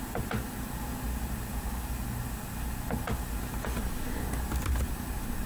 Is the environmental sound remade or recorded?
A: recorded